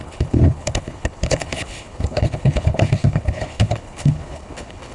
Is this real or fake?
fake